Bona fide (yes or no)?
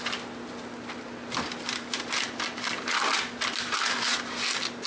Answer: yes